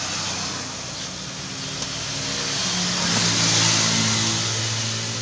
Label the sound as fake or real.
real